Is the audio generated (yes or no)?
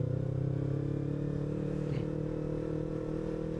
no